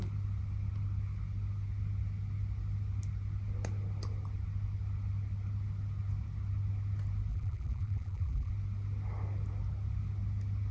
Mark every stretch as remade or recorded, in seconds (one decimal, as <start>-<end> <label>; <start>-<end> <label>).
0.0-7.3 recorded; 7.3-8.5 remade; 8.5-10.7 recorded